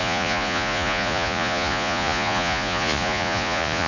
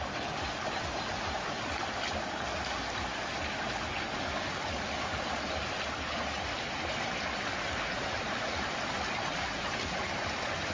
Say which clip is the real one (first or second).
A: second